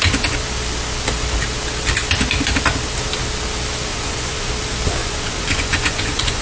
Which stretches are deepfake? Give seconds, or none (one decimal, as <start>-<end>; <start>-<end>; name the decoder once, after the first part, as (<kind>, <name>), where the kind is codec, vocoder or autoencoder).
3.9-4.5 (vocoder, Vocos); 5.0-6.4